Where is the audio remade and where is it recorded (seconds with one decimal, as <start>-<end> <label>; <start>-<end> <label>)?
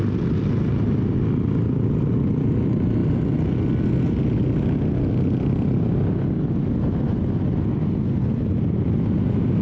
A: 0.0-9.6 recorded